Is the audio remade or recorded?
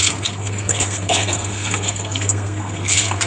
remade